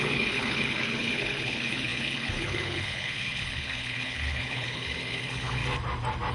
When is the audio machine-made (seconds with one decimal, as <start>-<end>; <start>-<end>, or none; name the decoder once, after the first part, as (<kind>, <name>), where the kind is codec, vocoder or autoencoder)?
0.0-5.6 (codec, HILCodec)